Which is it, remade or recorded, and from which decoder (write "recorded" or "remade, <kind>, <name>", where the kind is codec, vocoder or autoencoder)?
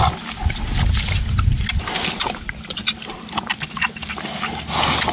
recorded